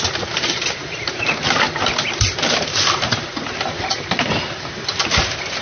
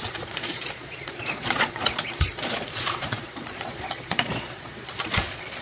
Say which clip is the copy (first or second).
second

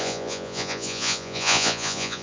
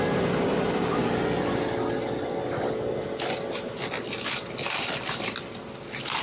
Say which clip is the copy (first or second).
first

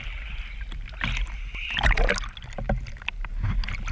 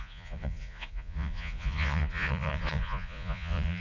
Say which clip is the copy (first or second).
second